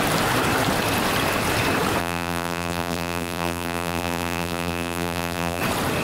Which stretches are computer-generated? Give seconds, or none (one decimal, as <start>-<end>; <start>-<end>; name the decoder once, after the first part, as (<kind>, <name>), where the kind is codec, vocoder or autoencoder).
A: 2.0-5.6 (vocoder, BigVGAN v2)